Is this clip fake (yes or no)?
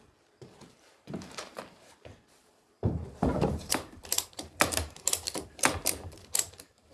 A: yes